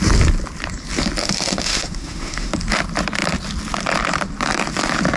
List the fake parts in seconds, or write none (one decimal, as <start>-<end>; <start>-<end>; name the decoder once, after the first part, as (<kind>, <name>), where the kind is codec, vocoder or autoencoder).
1.2-2.5 (autoencoder, DAC-VAE)